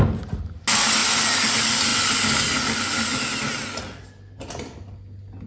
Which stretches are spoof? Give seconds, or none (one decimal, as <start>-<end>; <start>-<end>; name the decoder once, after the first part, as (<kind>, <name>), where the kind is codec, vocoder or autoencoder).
none